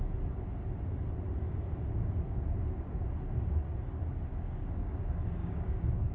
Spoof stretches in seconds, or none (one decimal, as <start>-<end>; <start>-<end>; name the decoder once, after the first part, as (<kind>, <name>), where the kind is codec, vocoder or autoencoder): 4.3-5.0 (codec, DAC); 5.4-6.1